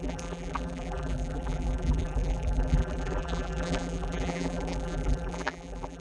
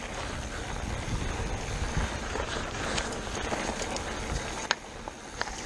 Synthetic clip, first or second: first